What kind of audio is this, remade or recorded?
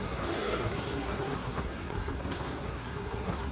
remade